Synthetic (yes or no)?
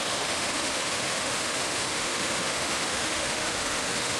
yes